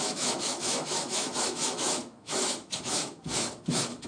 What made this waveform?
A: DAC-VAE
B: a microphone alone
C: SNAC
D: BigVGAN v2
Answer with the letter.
A